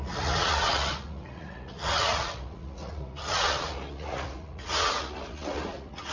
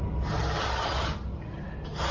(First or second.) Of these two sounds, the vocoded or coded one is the first